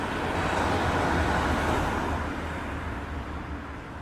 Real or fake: real